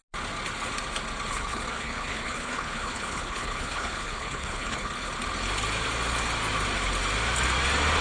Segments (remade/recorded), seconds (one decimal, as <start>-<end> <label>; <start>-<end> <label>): 0.0-1.3 recorded; 1.3-5.1 remade; 5.1-8.0 recorded